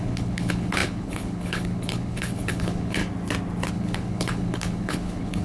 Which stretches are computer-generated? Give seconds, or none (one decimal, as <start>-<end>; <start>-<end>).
0.0-3.0; 3.7-5.4